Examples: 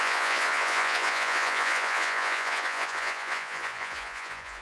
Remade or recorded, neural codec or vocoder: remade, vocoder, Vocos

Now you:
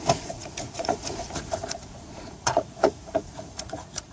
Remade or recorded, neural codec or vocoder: remade, vocoder, Vocos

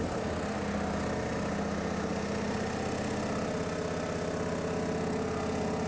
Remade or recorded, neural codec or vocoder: recorded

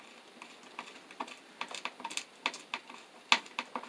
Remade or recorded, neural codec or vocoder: recorded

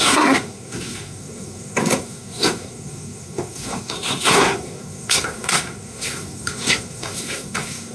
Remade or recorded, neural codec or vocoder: remade, codec, SNAC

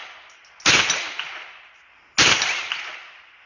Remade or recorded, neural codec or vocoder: recorded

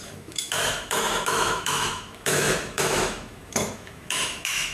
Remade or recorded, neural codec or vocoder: remade, autoencoder, DAC-VAE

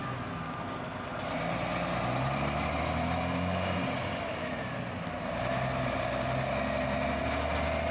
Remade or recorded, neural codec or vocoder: recorded